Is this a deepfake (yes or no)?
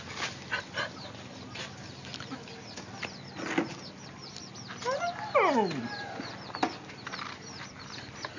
no